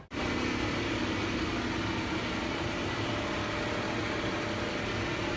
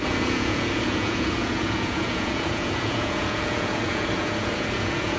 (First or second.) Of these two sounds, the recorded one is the first